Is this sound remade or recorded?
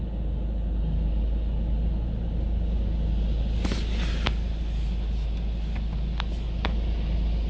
recorded